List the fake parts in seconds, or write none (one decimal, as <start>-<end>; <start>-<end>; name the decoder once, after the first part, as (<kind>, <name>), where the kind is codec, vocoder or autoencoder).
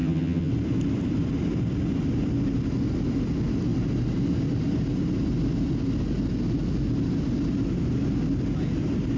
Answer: 0.0-0.5 (vocoder, HiFi-GAN)